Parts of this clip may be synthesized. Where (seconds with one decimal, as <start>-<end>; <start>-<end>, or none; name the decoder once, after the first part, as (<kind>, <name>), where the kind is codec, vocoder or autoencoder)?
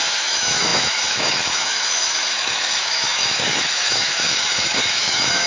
0.0-5.5 (autoencoder, DAC-VAE)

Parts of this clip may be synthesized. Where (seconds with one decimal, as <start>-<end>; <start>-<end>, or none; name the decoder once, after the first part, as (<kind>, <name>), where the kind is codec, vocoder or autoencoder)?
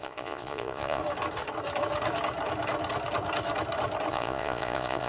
0.0-1.0 (vocoder, Vocos); 4.1-5.1